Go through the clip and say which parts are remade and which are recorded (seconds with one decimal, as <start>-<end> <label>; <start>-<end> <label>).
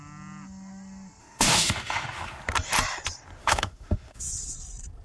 0.0-1.2 recorded; 1.2-2.4 remade; 2.4-3.4 recorded; 3.4-4.2 remade; 4.2-5.0 recorded